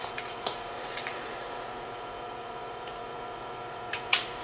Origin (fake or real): fake